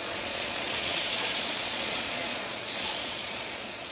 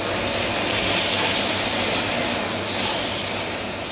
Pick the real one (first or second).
second